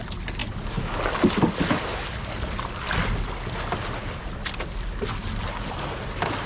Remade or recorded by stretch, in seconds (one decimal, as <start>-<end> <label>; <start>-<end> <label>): 0.0-6.5 recorded